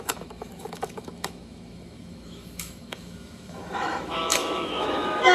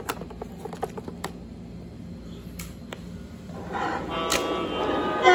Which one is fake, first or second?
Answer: first